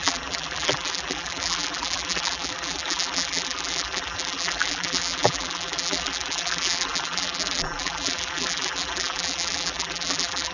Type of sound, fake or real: fake